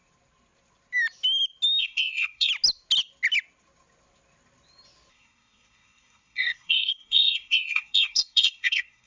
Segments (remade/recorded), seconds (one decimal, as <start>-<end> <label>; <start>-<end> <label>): 0.0-1.8 recorded; 1.8-2.5 remade; 2.5-5.1 recorded; 5.1-9.1 remade